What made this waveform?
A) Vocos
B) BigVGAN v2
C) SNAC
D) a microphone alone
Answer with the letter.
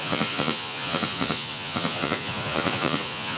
A